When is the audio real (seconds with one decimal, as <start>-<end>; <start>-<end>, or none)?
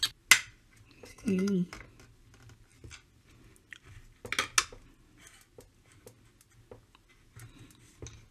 0.0-1.1; 1.7-8.3